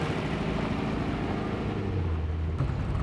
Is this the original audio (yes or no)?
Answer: yes